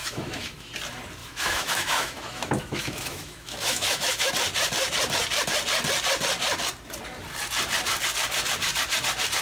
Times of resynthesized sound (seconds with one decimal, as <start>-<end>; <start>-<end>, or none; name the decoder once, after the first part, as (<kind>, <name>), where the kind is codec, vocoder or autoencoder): 0.0-0.7 (autoencoder, DAC-VAE); 1.2-4.3